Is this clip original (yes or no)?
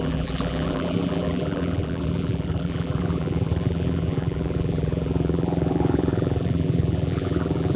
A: no